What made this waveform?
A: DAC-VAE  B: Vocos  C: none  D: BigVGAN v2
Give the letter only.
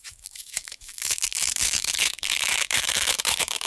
A